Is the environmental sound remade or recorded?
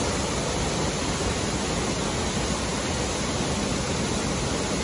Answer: recorded